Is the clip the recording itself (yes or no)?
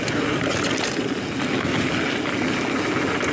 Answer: yes